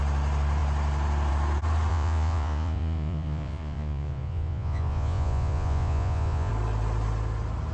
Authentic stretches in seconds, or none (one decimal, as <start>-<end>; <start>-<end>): 0.0-1.9; 6.5-7.7